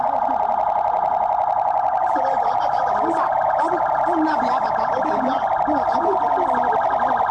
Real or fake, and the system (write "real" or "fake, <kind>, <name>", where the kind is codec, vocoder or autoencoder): real